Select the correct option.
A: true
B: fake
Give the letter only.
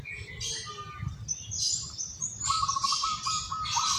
A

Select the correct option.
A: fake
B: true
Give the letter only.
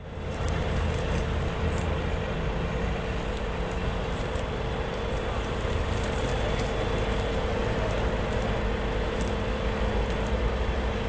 B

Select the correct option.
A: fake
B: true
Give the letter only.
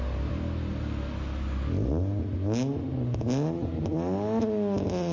B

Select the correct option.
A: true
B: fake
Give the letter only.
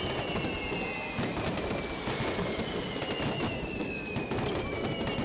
A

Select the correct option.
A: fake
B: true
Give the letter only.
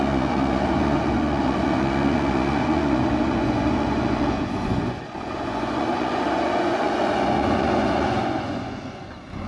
A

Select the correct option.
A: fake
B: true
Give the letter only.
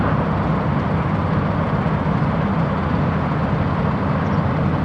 B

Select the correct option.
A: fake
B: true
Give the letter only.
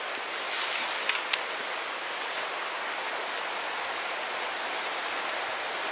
B